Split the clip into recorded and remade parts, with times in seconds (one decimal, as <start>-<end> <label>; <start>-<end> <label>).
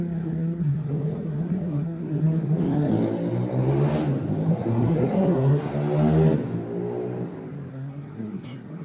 0.0-2.9 remade; 2.9-4.5 recorded; 4.5-5.7 remade; 5.7-7.7 recorded; 7.7-8.8 remade